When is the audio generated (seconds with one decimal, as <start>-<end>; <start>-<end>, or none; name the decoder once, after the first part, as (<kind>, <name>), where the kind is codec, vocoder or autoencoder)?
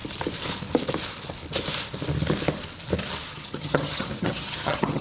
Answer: 3.3-5.0 (vocoder, HiFi-GAN)